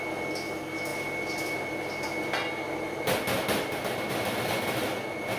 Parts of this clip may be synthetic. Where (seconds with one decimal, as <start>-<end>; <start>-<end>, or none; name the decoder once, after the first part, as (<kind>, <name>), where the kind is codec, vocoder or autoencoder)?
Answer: none